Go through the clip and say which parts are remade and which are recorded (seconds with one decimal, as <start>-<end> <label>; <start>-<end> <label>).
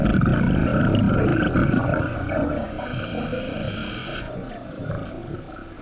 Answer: 0.0-1.6 recorded; 1.6-3.0 remade; 3.0-4.0 recorded; 4.0-4.8 remade; 4.8-5.8 recorded